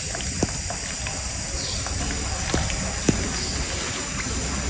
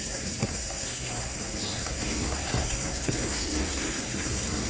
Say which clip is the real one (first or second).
first